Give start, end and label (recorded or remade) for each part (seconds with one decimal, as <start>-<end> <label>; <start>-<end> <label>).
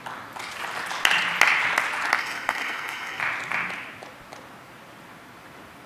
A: 0.0-2.2 recorded; 2.2-3.2 remade; 3.2-5.9 recorded